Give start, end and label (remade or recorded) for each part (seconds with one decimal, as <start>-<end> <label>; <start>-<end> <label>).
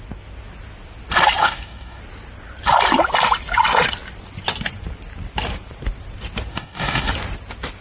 0.0-1.4 recorded; 1.4-2.0 remade; 2.0-6.5 recorded; 6.5-7.1 remade; 7.1-7.8 recorded